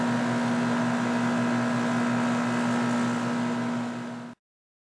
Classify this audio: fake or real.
real